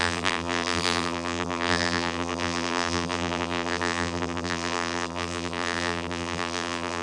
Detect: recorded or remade remade